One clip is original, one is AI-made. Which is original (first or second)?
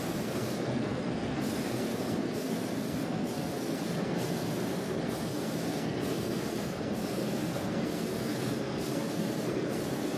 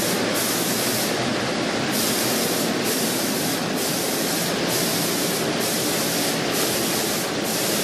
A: second